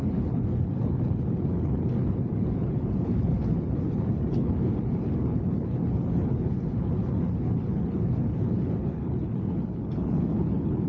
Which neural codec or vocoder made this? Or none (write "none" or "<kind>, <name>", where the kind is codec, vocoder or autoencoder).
codec, HILCodec